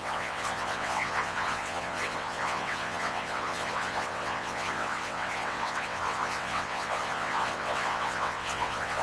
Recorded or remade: remade